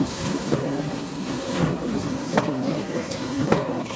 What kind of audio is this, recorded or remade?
remade